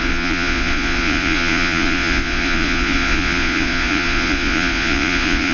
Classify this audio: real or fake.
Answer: fake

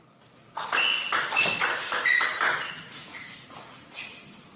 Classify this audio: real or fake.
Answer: real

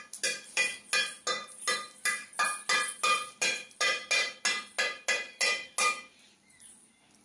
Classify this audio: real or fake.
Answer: real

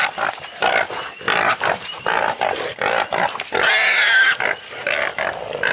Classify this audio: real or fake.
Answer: real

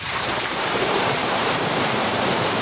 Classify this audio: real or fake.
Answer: fake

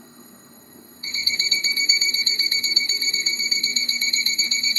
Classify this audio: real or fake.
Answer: fake